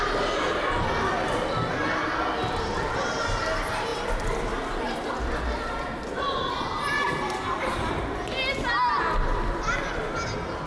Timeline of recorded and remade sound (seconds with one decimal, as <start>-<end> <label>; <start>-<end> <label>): 0.0-10.7 recorded